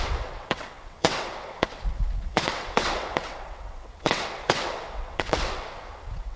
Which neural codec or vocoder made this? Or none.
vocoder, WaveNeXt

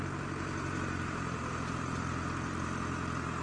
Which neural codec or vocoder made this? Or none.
none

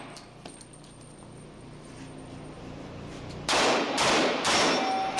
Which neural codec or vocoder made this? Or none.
none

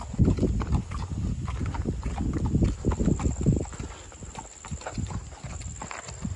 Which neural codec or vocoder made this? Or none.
none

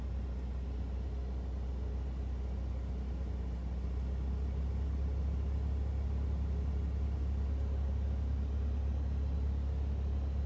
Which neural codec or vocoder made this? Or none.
none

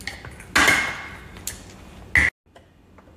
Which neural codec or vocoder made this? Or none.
none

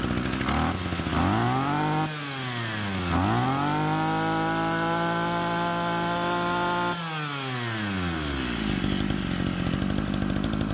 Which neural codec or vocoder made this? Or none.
none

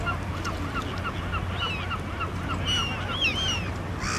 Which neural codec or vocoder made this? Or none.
none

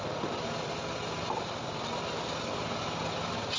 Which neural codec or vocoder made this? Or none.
none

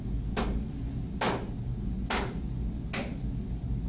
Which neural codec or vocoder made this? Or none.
none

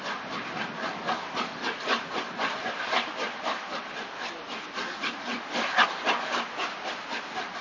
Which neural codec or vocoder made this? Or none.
none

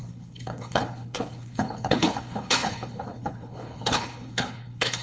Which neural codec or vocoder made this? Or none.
codec, HILCodec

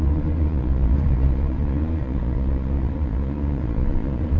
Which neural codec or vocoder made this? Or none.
vocoder, Vocos